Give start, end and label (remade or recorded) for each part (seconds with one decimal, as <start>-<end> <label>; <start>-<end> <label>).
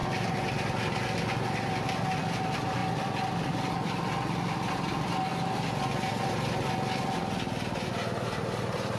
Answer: 0.0-9.0 recorded